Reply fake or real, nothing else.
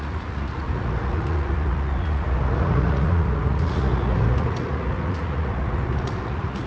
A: fake